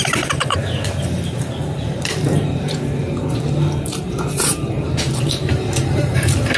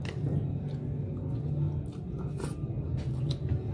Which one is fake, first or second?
first